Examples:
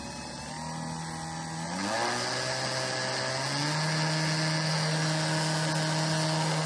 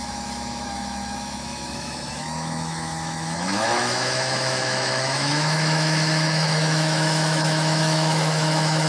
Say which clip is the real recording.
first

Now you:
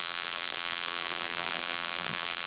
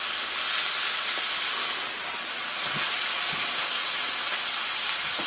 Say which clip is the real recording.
second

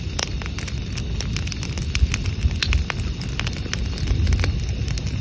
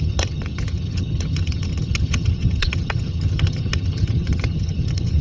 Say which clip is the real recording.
first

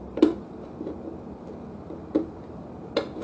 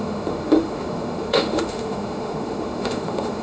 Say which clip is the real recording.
first